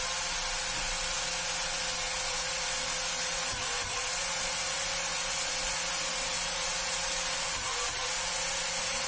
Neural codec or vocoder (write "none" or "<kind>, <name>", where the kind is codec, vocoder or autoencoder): none